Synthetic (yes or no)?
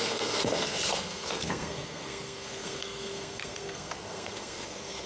yes